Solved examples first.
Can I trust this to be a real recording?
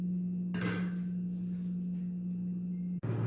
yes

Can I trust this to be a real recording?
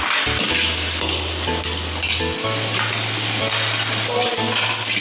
yes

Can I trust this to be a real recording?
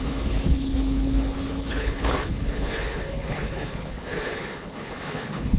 no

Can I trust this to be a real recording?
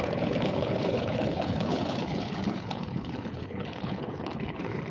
no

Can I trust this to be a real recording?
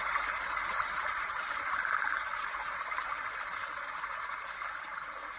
yes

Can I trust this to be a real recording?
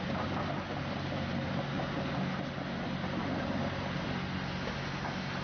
yes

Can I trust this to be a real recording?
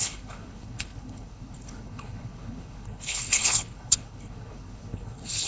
no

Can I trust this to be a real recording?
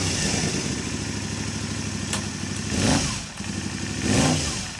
yes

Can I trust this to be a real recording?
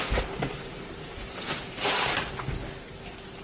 yes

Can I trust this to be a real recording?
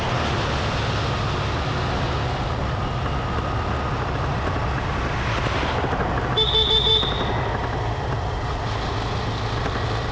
yes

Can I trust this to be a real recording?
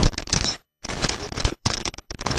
no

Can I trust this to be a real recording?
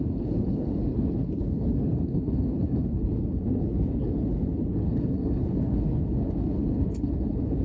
no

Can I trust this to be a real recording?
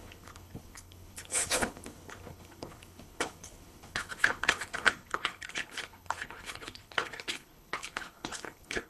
no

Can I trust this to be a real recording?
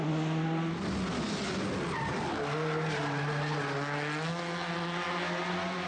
yes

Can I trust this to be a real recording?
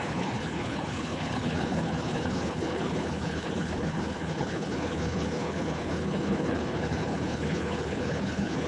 no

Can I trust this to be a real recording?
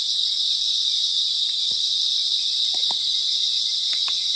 yes